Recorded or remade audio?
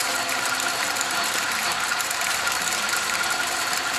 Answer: remade